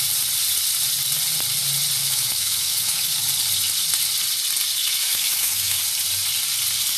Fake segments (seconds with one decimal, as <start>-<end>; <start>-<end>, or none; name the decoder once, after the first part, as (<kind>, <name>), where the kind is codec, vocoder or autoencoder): 2.0-3.1 (autoencoder, DAC-VAE); 4.8-5.8